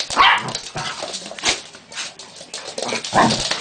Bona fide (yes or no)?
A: yes